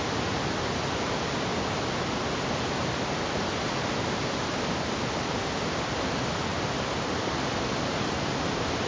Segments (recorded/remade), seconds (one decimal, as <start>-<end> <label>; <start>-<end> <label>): 0.0-6.5 recorded; 6.5-8.9 remade